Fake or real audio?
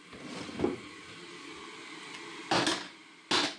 real